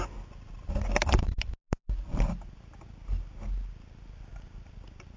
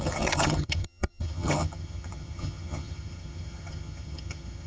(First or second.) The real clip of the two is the first